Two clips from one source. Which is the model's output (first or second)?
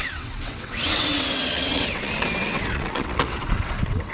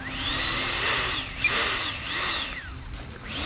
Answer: first